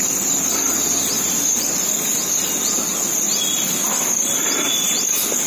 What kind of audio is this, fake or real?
real